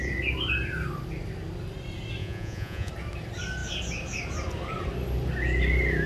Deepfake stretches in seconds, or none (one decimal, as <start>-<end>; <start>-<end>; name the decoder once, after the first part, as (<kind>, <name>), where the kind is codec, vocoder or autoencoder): 2.2-2.9 (vocoder, Vocos)